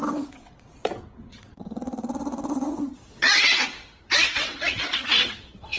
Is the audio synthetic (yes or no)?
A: yes